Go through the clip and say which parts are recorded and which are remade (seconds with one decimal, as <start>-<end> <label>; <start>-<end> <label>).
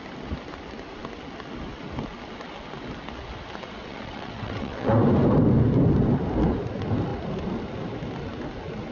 0.0-3.8 recorded; 3.8-4.9 remade; 4.9-8.9 recorded